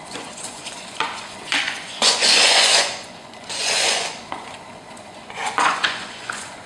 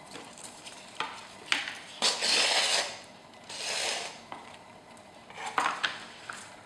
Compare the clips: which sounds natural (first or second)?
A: second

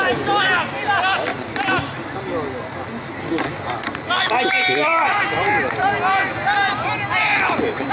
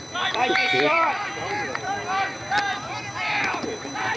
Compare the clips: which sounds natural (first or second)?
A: first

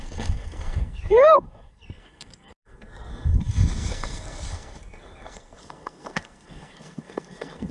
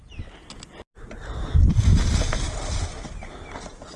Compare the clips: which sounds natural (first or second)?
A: second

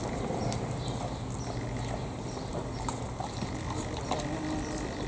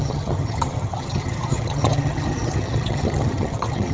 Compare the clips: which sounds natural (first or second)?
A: first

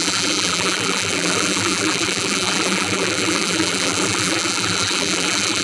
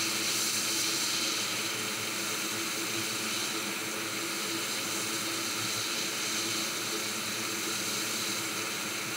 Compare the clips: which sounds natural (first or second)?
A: second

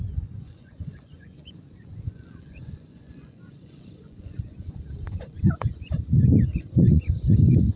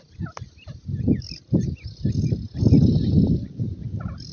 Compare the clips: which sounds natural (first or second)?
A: second